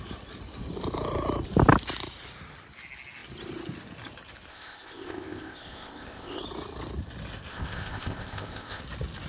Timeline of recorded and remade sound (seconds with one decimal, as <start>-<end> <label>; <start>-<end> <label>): 0.0-4.5 recorded; 4.5-6.4 remade; 6.4-7.5 recorded; 7.5-8.8 remade; 8.8-9.3 recorded